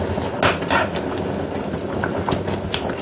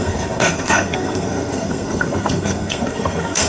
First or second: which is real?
first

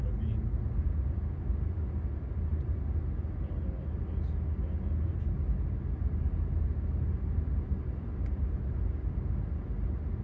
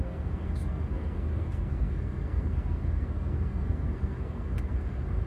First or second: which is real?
first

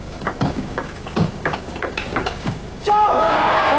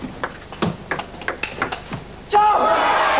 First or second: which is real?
second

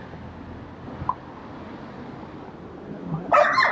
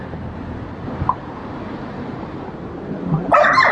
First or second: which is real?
first